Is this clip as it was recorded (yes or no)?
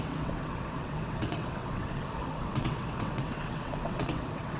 no